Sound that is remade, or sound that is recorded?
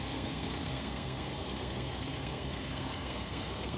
remade